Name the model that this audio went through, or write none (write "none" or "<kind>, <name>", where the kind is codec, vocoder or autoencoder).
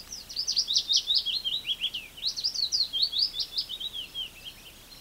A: none